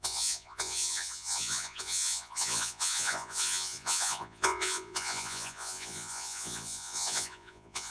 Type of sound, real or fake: fake